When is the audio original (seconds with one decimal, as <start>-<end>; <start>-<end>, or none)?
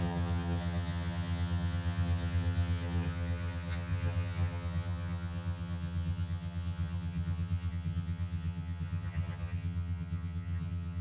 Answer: none